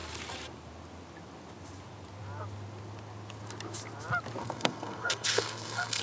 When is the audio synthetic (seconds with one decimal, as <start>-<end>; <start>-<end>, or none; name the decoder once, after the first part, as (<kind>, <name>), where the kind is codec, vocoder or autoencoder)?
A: 4.4-6.0 (codec, SNAC)